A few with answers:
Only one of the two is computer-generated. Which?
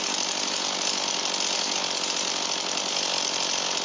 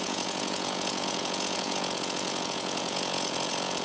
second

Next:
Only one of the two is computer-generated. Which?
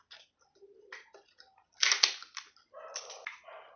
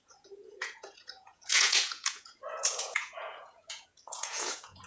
second